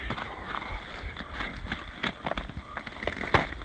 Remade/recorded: recorded